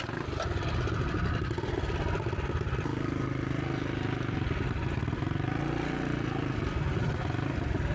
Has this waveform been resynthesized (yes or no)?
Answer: no